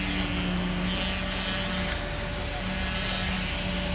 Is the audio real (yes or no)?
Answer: yes